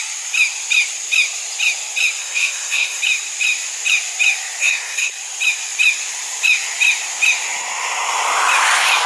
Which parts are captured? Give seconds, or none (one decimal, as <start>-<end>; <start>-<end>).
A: 0.0-2.2; 3.0-4.6; 5.1-9.1